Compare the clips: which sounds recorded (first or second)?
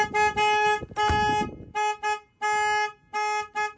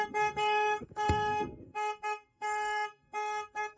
first